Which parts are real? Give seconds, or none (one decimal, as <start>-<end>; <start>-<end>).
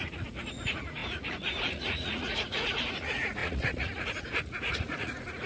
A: none